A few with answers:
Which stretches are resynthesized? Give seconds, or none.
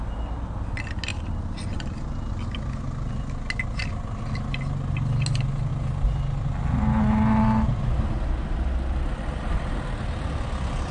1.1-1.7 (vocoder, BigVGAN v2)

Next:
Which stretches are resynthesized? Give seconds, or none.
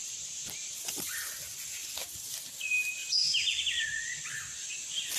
0.0-1.3 (vocoder, BigVGAN v2); 3.0-3.6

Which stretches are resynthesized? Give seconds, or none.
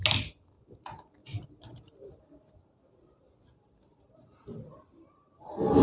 1.2-2.1 (vocoder, BigVGAN v2)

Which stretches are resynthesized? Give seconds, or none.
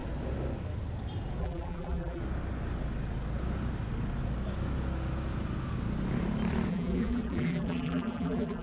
1.4-2.2 (vocoder, BigVGAN v2); 6.7-8.6